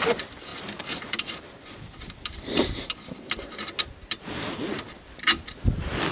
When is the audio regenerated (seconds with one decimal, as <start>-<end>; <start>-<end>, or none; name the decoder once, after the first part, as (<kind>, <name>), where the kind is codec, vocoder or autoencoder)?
0.5-4.2 (vocoder, BigVGAN v2)